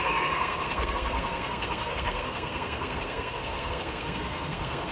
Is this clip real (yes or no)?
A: no